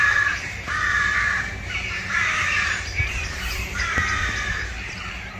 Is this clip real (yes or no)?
no